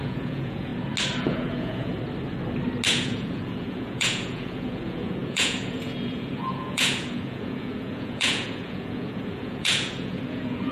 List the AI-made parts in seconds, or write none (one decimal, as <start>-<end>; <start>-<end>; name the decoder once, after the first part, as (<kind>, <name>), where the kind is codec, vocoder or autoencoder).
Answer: 0.0-0.7 (vocoder, Vocos); 1.2-1.9; 2.9-10.7